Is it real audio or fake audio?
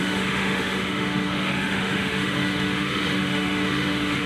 fake